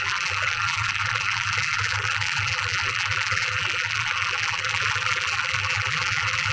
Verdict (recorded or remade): remade